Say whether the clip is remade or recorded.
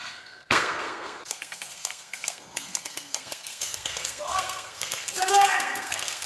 remade